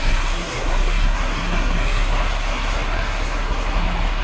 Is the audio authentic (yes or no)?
no